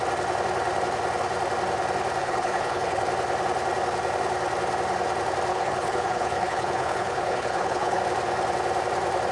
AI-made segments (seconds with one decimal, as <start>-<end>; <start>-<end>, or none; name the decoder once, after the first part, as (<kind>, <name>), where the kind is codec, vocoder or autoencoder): 2.2-3.0 (codec, HILCodec); 5.5-8.0